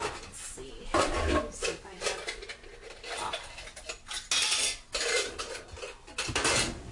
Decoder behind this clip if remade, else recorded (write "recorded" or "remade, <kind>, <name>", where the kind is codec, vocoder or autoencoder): recorded